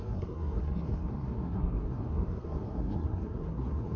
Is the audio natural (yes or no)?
no